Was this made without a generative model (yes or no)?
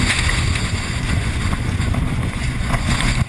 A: no